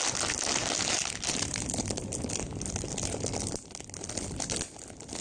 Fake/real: real